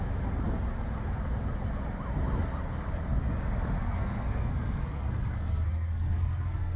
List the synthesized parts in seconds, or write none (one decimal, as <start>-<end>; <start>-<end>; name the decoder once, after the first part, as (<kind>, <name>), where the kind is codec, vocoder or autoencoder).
3.8-6.8 (codec, SNAC)